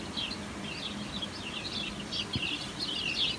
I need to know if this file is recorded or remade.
recorded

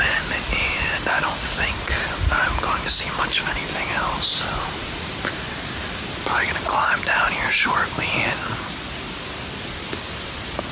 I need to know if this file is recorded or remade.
recorded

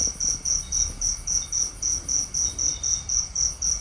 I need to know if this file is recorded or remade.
recorded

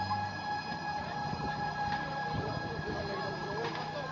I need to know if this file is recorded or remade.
recorded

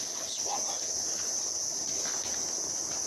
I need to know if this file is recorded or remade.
recorded